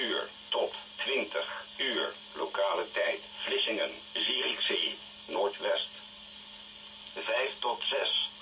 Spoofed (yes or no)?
yes